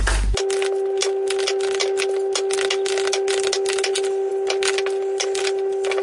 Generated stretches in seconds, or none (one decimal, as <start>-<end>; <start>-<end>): none